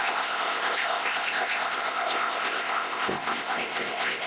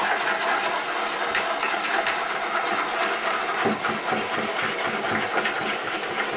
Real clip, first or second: second